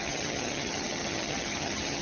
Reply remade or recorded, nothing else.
remade